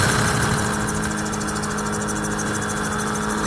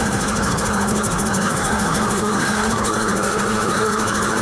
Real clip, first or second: first